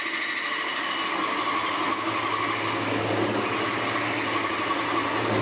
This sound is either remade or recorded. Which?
recorded